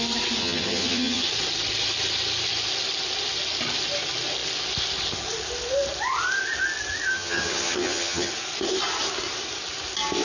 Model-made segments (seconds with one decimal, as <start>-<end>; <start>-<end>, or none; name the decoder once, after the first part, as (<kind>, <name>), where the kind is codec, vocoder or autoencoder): 0.4-1.3 (vocoder, HiFi-GAN); 7.1-8.3